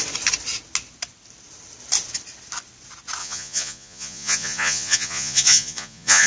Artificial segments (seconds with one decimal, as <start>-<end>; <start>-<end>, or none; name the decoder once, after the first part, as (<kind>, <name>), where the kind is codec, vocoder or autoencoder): 3.2-6.3 (vocoder, Vocos)